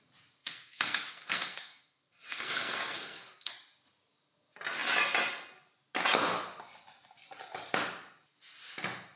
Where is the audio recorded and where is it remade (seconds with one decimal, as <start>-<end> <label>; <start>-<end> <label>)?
0.0-0.4 recorded; 0.4-3.5 remade; 3.5-9.2 recorded